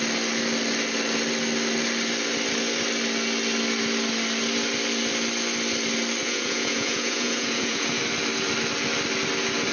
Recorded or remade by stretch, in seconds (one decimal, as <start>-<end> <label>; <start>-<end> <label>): 0.0-6.2 recorded; 6.2-8.0 remade; 8.0-9.7 recorded